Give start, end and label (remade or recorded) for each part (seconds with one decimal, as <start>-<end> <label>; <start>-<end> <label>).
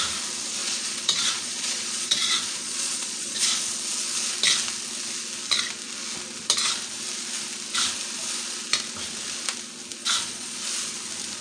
0.0-0.6 recorded; 0.6-3.4 remade; 3.4-10.0 recorded; 10.0-10.6 remade; 10.6-11.4 recorded